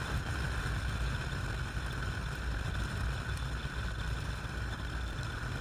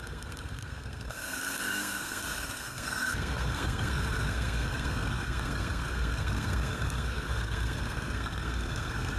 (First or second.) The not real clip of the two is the second